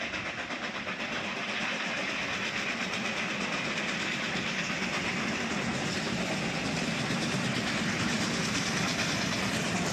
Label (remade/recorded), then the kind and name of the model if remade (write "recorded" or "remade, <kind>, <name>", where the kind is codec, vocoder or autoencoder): recorded